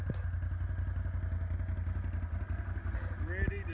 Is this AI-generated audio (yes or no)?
no